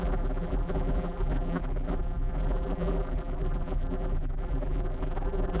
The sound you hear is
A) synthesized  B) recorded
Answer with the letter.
A